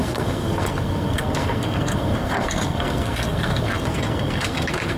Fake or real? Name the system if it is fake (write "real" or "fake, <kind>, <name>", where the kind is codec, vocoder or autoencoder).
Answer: fake, codec, SNAC